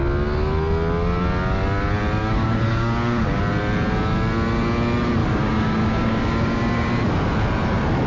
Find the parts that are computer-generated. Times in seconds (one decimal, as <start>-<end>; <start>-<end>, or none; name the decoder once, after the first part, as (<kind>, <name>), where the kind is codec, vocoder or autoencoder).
2.2-3.4 (codec, DAC); 5.2-6.9